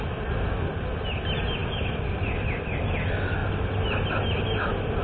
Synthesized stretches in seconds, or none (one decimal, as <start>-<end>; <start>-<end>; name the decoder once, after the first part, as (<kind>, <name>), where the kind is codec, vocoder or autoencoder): none